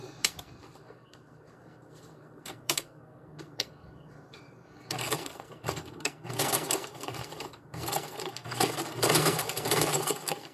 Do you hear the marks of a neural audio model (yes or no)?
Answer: yes